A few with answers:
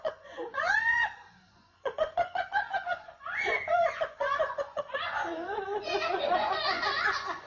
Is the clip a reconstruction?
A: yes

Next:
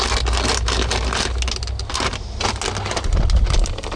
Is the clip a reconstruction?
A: no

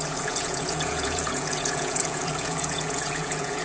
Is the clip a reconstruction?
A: yes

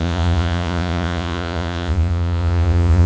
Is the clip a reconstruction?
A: yes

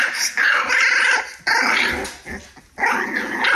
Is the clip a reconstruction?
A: no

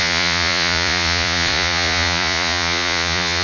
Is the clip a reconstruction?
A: yes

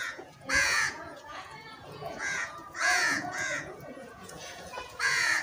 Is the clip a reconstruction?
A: yes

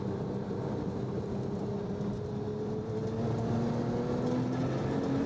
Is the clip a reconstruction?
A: no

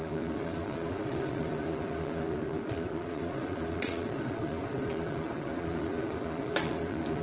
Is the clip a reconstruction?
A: yes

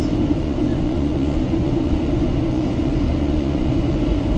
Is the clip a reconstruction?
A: yes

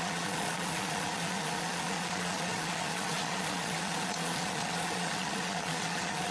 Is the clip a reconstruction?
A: yes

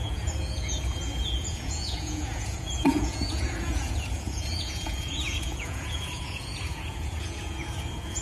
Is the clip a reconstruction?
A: yes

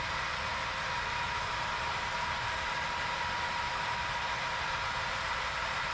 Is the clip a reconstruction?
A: no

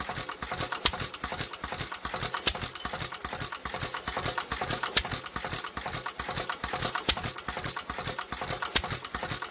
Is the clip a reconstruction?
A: no